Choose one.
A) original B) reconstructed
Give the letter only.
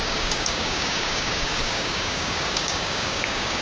B